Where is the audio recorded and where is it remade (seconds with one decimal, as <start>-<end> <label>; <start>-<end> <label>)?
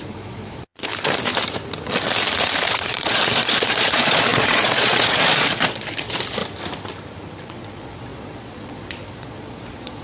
0.0-0.9 remade; 0.9-2.7 recorded; 2.7-6.4 remade; 6.4-7.4 recorded; 7.4-10.0 remade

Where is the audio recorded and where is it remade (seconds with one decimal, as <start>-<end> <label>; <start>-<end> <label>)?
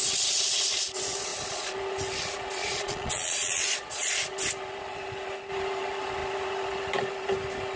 0.0-2.6 recorded; 2.6-4.1 remade; 4.1-7.8 recorded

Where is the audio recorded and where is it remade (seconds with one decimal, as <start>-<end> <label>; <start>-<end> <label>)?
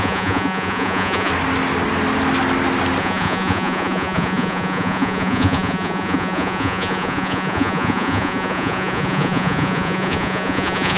0.0-1.3 remade; 1.3-3.0 recorded; 3.0-11.0 remade